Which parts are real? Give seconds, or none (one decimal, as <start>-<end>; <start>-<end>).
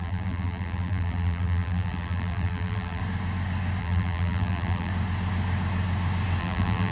3.0-3.8; 4.9-6.4